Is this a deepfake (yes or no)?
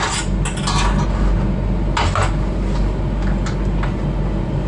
no